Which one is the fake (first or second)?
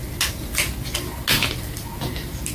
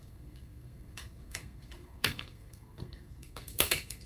second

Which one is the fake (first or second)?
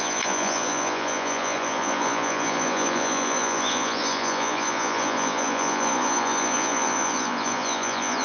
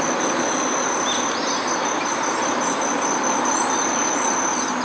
first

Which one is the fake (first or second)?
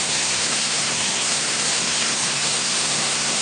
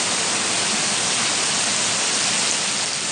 first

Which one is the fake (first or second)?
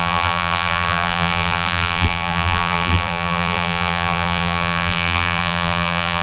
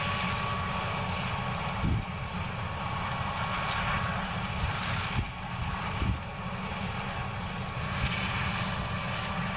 first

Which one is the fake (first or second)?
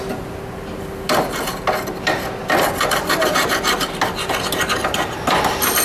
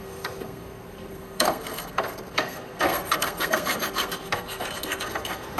second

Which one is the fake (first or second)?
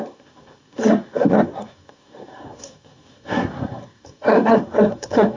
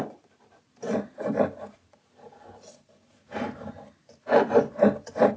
first